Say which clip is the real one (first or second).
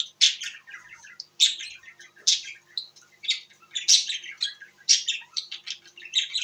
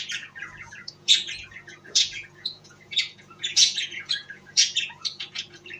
first